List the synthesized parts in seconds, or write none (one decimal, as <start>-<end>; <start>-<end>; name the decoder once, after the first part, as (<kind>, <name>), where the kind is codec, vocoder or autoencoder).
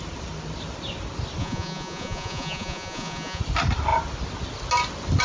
1.4-3.4 (vocoder, Vocos)